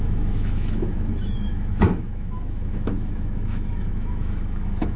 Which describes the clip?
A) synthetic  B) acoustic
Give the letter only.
A